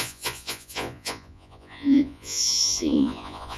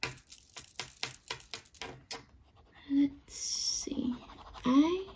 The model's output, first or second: first